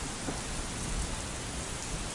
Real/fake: real